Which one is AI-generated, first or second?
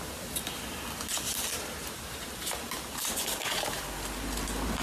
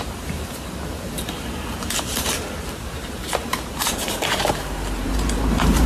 second